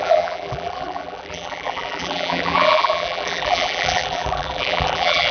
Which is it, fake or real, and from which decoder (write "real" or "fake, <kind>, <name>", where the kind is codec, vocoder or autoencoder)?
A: fake, vocoder, BigVGAN v2